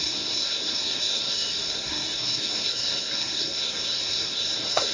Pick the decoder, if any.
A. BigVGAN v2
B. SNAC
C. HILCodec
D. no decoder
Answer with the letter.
B